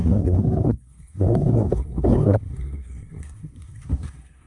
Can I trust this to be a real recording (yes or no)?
no